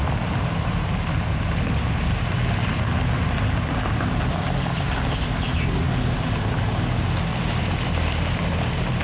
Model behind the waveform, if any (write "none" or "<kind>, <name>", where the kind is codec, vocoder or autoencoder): none